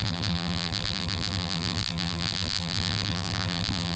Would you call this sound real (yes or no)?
no